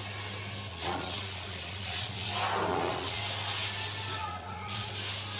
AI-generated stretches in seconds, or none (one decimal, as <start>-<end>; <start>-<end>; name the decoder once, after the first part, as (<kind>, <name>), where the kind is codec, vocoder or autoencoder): 0.7-2.3 (vocoder, Vocos); 2.7-3.2; 4.2-4.9